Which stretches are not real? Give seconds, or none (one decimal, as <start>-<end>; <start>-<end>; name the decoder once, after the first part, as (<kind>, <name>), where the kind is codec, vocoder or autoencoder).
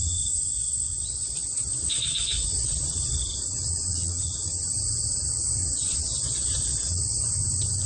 0.0-4.7 (vocoder, Vocos); 5.6-7.0